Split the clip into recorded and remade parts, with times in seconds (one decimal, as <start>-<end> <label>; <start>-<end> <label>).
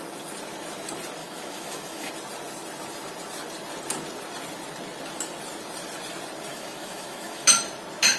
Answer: 0.0-1.2 recorded; 1.2-2.1 remade; 2.1-6.5 recorded; 6.5-7.6 remade; 7.6-8.2 recorded